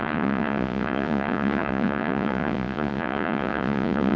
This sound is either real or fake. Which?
fake